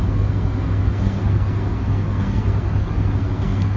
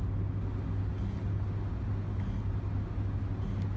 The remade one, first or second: first